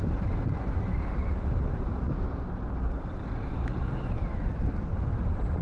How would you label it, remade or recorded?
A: recorded